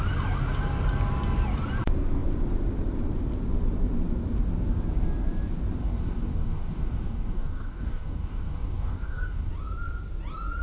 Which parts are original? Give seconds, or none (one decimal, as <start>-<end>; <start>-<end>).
0.0-5.8; 9.5-10.6

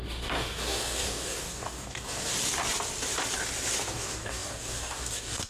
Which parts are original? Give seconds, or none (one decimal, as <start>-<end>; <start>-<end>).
2.3-3.9